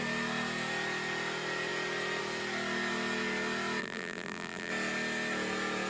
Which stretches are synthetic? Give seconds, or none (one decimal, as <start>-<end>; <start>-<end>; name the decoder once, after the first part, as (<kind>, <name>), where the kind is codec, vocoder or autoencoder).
3.8-4.7 (vocoder, BigVGAN v2)